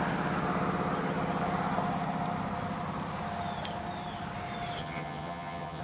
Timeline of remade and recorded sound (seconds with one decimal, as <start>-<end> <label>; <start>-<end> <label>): 0.0-4.8 recorded; 4.8-5.8 remade